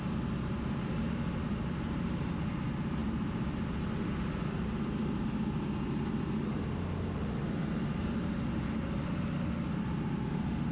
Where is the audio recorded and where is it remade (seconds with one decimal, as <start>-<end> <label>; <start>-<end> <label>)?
0.0-10.7 recorded